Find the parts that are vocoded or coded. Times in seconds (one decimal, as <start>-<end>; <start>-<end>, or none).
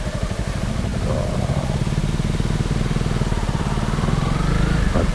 none